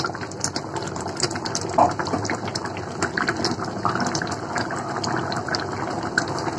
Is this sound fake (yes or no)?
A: no